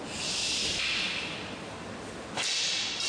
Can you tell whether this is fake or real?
real